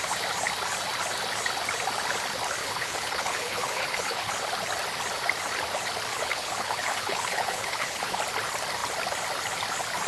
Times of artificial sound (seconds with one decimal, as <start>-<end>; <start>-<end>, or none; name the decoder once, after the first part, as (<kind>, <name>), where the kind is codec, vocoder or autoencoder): 2.6-4.3 (codec, HILCodec); 6.1-8.2